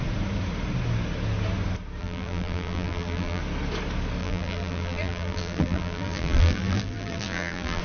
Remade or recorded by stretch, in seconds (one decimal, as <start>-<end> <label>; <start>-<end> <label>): 0.0-2.0 recorded; 2.0-3.4 remade; 3.4-4.2 recorded; 4.2-7.8 remade